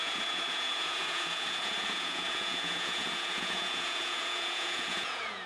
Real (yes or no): no